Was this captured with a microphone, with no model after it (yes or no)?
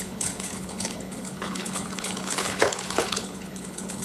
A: no